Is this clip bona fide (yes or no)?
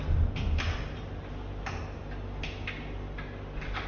yes